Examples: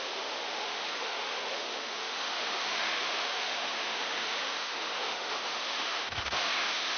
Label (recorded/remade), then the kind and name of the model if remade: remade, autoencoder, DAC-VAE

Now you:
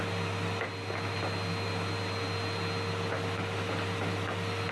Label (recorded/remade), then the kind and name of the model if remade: recorded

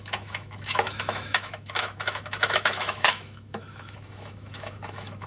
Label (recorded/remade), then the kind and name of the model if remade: remade, autoencoder, DAC-VAE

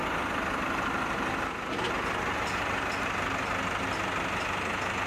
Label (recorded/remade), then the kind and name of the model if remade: recorded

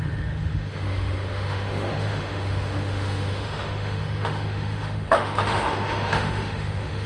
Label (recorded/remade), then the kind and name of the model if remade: remade, autoencoder, DAC-VAE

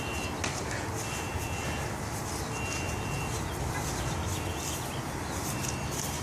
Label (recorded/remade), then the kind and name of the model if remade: recorded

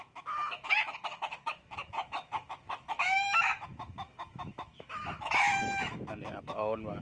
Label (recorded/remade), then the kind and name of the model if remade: remade, autoencoder, DAC-VAE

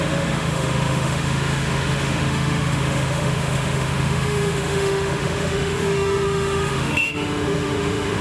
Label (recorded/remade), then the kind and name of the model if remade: remade, autoencoder, DAC-VAE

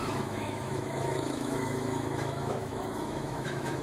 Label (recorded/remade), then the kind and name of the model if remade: remade, autoencoder, DAC-VAE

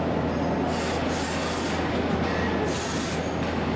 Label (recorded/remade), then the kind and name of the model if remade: recorded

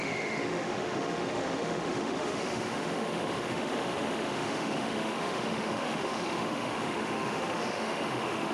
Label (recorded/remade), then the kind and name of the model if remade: remade, autoencoder, DAC-VAE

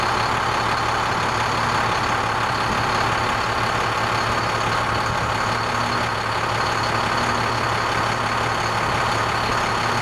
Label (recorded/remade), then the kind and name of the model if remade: recorded